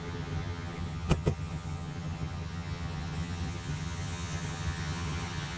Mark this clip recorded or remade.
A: remade